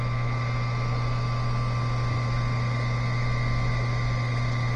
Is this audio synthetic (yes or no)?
no